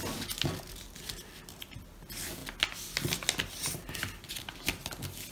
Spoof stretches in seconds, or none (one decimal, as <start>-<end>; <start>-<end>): none